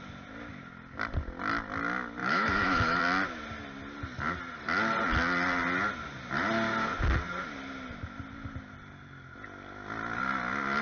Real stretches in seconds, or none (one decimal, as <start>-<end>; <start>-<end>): 0.0-2.2; 3.0-10.8